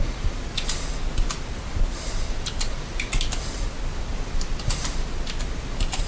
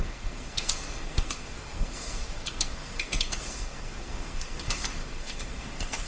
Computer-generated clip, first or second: second